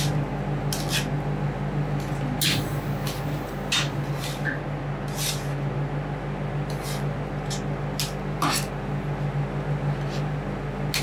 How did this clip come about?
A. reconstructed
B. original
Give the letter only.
B